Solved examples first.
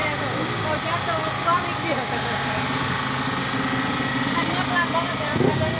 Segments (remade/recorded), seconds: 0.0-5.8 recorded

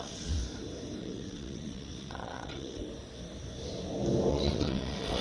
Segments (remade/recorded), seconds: 0.0-0.4 remade; 0.4-1.0 recorded; 1.0-2.8 remade; 2.8-4.3 recorded; 4.3-5.2 remade

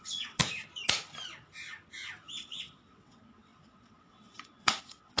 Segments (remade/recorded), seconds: 0.0-0.4 remade; 0.4-2.3 recorded; 2.3-5.2 remade

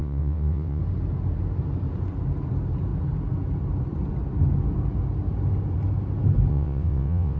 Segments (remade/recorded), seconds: 0.0-0.8 remade; 0.8-6.5 recorded; 6.5-7.4 remade

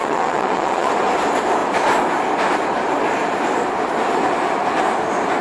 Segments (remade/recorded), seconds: 0.0-0.9 remade; 0.9-5.4 recorded

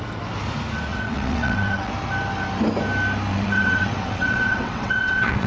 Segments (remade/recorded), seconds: 0.0-0.9 recorded; 0.9-1.9 remade; 1.9-3.3 recorded; 3.3-5.5 remade

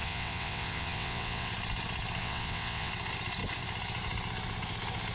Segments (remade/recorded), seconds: 0.0-1.5 remade; 1.5-2.2 recorded; 2.2-2.9 remade; 2.9-5.1 recorded